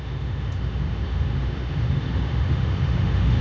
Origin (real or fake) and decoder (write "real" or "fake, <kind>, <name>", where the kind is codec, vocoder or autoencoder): fake, autoencoder, DAC-VAE